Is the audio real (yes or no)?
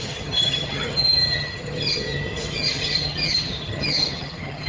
no